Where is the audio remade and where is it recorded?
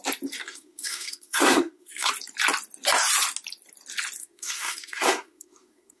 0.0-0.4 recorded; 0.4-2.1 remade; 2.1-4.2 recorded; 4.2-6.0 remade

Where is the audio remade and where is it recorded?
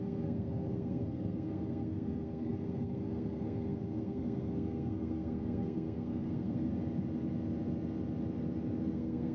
0.0-6.7 remade; 6.7-8.8 recorded; 8.8-9.3 remade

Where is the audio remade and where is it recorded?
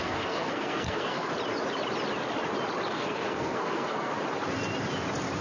0.0-1.3 remade; 1.3-2.9 recorded; 2.9-4.1 remade; 4.1-5.4 recorded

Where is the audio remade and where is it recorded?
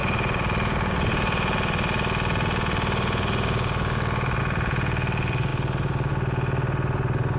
0.0-7.4 recorded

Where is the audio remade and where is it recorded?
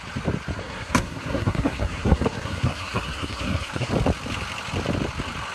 0.0-0.6 recorded; 0.6-3.9 remade; 3.9-5.5 recorded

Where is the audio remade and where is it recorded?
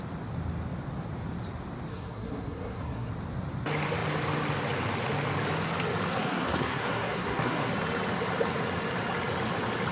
0.0-1.9 recorded; 1.9-3.1 remade; 3.1-6.1 recorded; 6.1-7.7 remade; 7.7-9.9 recorded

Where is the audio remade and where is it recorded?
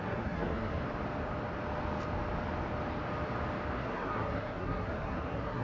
0.0-0.8 remade; 0.8-3.8 recorded; 3.8-5.6 remade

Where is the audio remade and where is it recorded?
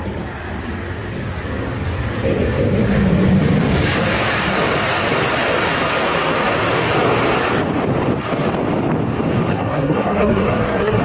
0.0-9.5 recorded; 9.5-11.0 remade